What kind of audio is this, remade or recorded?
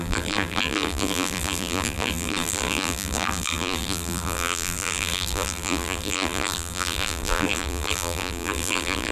remade